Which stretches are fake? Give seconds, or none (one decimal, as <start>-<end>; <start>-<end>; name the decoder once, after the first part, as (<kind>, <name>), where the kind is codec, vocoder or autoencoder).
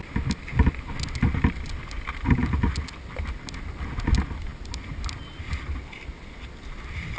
none